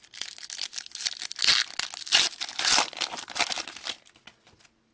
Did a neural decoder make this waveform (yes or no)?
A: no